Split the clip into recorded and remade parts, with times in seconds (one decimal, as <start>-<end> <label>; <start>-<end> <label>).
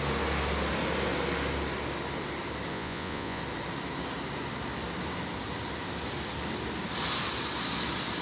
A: 0.0-2.7 recorded; 2.7-3.4 remade; 3.4-8.2 recorded